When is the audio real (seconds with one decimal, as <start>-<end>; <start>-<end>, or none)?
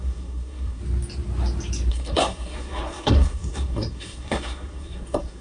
0.8-1.9